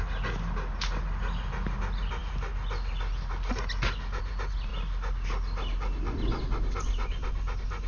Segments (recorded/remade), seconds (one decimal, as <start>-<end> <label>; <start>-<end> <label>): 0.0-7.9 recorded